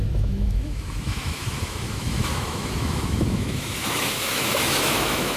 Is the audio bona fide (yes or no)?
no